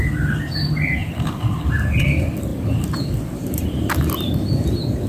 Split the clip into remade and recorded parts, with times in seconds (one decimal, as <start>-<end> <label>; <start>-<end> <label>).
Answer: 0.0-1.0 recorded; 1.0-1.7 remade; 1.7-2.5 recorded; 2.5-3.9 remade; 3.9-5.1 recorded